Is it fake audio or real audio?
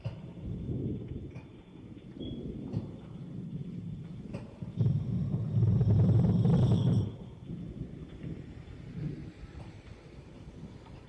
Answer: fake